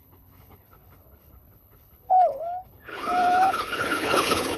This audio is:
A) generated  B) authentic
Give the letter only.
A